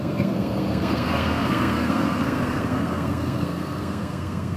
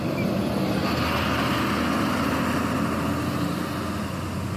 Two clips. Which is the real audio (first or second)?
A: second